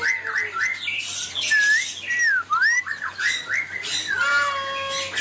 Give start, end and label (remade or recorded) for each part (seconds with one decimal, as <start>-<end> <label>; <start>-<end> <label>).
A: 0.0-5.2 recorded